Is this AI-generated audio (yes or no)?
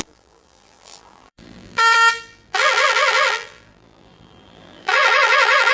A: yes